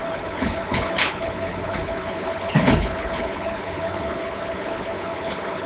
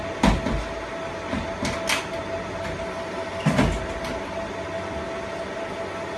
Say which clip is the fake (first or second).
first